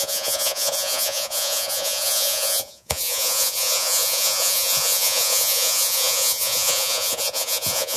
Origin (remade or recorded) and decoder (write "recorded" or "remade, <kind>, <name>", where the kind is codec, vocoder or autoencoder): remade, vocoder, Vocos